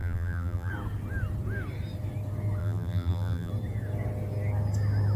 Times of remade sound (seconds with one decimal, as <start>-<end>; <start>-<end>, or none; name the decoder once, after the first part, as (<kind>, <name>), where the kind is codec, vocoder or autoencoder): 0.0-0.7 (vocoder, BigVGAN v2); 2.6-3.5